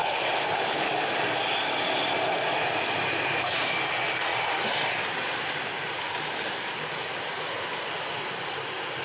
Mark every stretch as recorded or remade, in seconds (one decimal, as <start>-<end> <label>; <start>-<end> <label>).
0.0-0.9 remade; 0.9-9.0 recorded